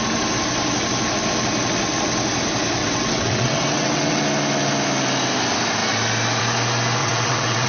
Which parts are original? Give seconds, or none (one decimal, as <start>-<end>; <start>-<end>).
0.0-2.8; 4.2-7.0